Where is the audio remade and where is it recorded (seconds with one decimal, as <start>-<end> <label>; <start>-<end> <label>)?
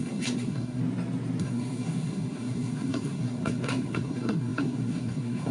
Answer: 0.0-0.8 remade; 0.8-1.4 recorded; 1.4-5.5 remade